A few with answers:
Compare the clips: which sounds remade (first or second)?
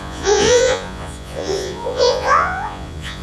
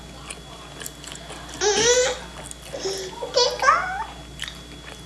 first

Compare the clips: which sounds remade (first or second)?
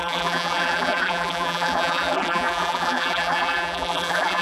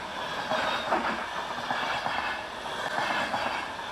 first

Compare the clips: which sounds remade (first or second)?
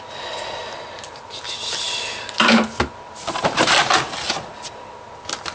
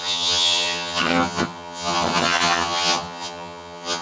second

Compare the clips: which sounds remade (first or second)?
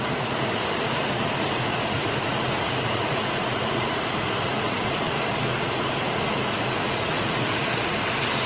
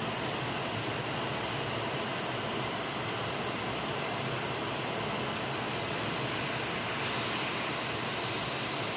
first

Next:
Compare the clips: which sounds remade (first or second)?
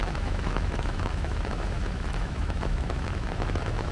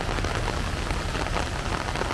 first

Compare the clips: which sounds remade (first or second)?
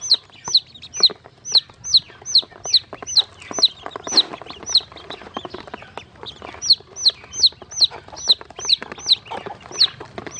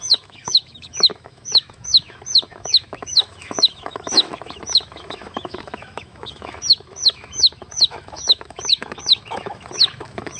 second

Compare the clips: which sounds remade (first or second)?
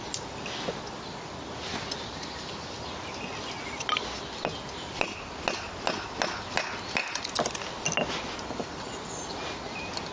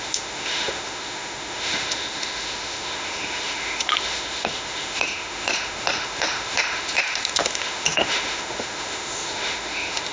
second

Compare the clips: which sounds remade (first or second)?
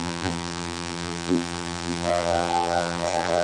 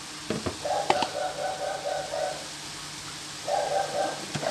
first